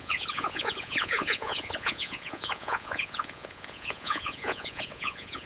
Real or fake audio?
fake